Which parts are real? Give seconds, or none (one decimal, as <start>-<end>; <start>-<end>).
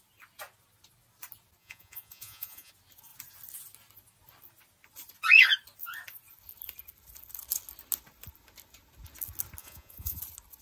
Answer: 0.0-1.6; 2.7-9.6; 10.2-10.6